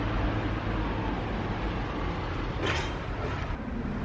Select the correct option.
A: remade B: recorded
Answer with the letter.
B